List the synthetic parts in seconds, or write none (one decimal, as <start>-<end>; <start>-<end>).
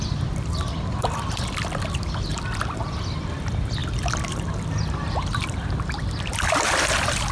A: 0.0-2.3; 2.8-7.3